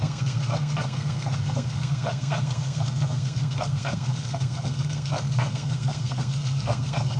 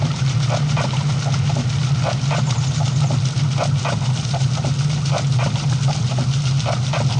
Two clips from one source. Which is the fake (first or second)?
first